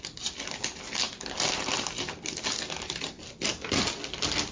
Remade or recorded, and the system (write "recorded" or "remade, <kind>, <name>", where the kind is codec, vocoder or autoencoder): recorded